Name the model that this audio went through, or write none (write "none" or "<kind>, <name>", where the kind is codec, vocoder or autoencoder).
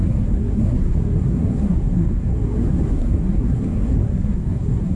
codec, SNAC